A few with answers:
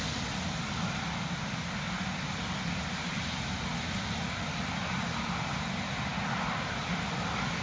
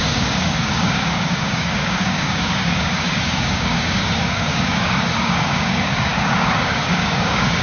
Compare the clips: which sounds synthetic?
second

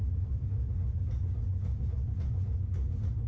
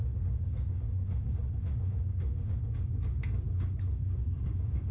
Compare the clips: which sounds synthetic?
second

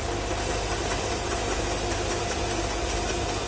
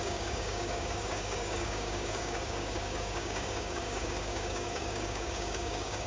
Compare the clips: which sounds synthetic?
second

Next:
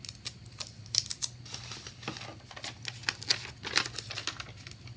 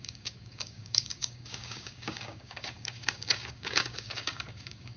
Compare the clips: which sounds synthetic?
second